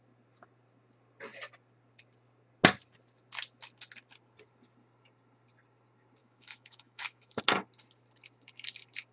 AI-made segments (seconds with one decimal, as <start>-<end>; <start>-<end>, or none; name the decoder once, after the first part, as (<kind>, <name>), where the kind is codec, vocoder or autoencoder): 6.2-7.4 (autoencoder, DAC-VAE)